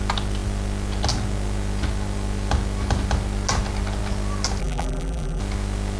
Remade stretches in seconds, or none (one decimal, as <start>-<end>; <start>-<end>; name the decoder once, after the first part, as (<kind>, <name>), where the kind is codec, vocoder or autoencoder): 4.6-5.4 (vocoder, BigVGAN v2)